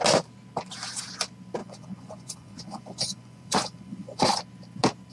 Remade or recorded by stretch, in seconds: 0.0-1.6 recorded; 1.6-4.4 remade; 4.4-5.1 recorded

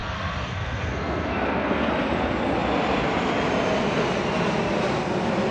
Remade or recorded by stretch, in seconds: 0.0-1.9 remade; 1.9-5.5 recorded

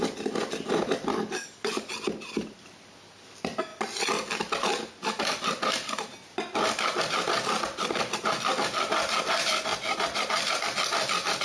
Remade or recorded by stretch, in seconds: 0.0-1.1 recorded; 1.1-1.9 remade; 1.9-11.4 recorded

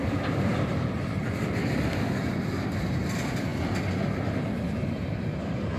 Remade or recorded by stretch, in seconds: 0.0-5.8 remade

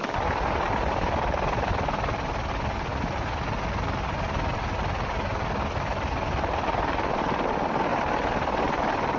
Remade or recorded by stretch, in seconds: 0.0-9.2 recorded

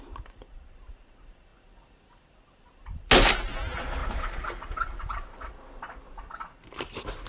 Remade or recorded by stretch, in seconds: 0.0-4.0 recorded; 4.0-5.5 remade; 5.5-7.3 recorded